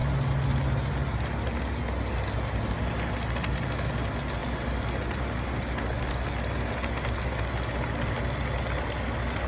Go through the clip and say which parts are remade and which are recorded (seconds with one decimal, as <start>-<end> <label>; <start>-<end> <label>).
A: 0.0-9.5 recorded